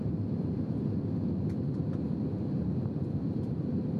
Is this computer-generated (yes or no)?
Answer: yes